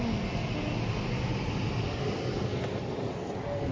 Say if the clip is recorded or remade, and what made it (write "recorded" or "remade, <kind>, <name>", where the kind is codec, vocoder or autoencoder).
recorded